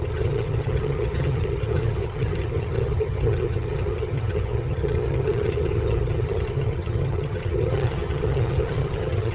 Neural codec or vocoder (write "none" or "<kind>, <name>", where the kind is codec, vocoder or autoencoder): vocoder, HiFi-GAN